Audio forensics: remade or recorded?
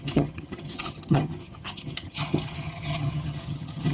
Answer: remade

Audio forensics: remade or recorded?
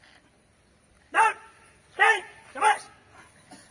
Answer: recorded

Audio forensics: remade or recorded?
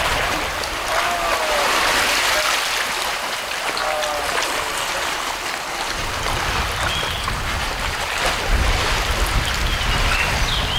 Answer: recorded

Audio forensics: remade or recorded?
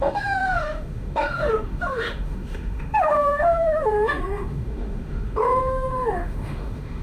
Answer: remade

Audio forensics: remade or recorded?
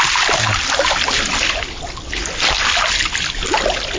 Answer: recorded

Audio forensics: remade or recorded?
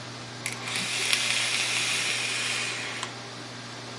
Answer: recorded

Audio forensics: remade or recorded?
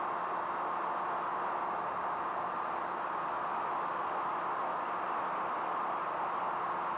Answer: recorded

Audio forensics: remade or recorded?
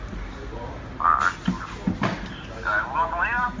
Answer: recorded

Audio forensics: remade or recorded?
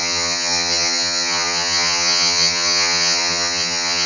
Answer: remade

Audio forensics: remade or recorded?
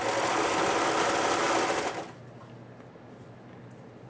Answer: recorded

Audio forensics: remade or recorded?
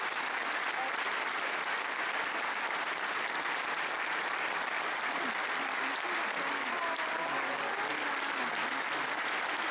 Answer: recorded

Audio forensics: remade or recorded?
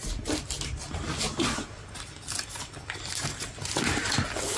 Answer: recorded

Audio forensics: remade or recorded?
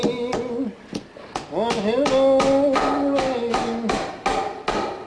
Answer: recorded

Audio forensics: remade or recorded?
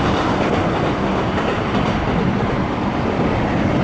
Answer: recorded